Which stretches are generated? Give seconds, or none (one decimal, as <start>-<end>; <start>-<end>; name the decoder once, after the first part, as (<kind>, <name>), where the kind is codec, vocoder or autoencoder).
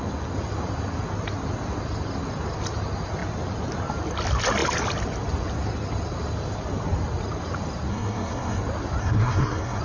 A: 7.9-8.6 (codec, SNAC); 9.0-9.8